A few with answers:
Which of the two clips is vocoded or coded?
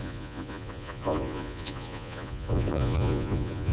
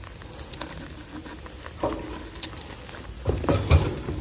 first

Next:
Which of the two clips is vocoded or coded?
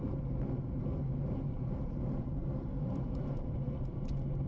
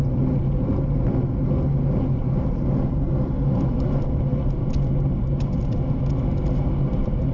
first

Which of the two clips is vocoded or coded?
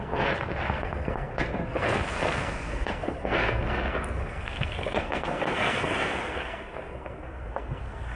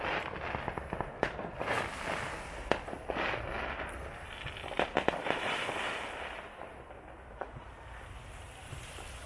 first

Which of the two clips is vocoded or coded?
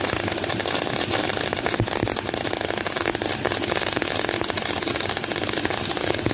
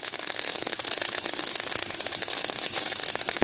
second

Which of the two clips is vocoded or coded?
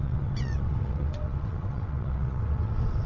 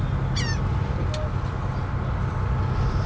first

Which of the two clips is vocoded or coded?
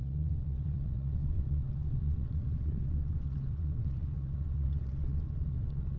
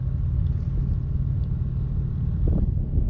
first